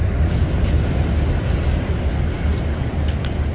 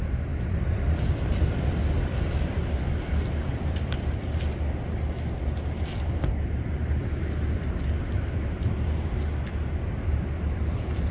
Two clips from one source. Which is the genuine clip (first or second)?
first